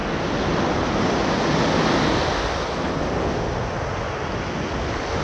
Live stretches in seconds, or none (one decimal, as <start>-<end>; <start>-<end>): 0.0-5.2